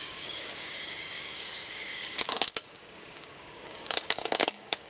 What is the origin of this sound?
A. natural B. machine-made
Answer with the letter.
B